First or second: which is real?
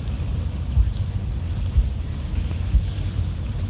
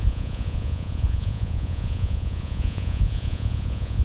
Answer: first